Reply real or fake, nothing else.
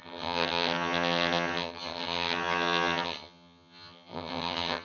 fake